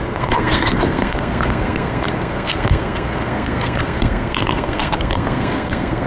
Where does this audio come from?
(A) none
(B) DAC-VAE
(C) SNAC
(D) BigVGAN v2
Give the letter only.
C